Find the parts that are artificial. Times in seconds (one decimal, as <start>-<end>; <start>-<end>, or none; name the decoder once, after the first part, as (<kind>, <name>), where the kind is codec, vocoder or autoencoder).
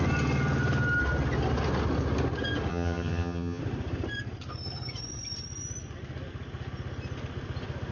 2.7-3.6 (vocoder, HiFi-GAN)